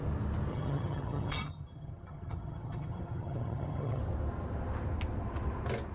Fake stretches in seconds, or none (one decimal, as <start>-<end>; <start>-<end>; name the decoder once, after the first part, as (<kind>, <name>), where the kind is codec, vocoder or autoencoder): 0.5-4.0 (vocoder, HiFi-GAN)